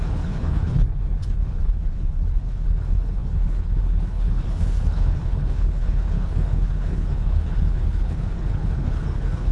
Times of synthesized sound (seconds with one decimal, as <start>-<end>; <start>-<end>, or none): 0.0-9.5